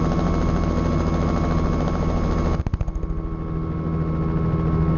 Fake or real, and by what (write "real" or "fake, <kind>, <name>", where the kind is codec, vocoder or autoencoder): real